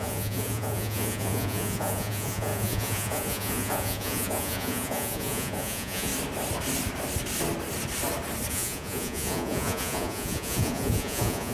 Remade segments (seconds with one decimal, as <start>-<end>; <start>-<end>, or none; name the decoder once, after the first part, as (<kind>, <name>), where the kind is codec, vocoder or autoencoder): 0.0-6.1 (vocoder, Vocos); 8.5-11.5